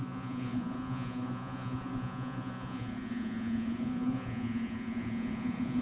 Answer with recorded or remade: remade